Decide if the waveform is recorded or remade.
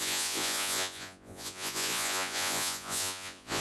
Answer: remade